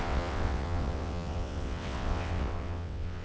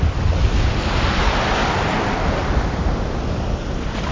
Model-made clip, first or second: first